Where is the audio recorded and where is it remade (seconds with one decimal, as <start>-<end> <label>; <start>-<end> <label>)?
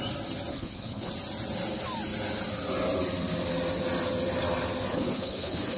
0.0-0.5 recorded; 0.5-1.1 remade; 1.1-4.9 recorded; 4.9-5.8 remade